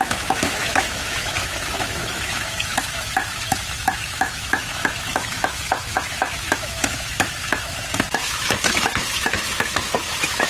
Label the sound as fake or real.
fake